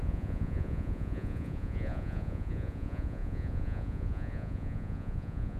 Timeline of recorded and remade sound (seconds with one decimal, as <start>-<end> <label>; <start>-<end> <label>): 0.0-5.6 remade